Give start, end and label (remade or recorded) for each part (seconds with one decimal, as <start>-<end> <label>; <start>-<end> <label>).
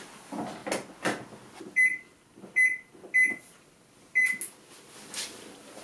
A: 0.0-5.8 recorded